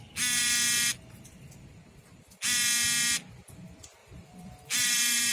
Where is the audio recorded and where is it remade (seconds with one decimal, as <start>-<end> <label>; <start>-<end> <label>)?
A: 0.0-4.0 recorded; 4.0-5.3 remade